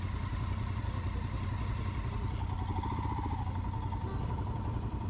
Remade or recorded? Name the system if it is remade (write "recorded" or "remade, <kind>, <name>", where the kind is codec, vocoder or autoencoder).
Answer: recorded